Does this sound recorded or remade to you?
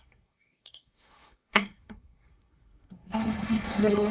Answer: remade